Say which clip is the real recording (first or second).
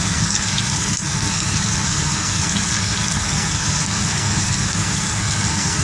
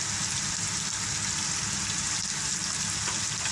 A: second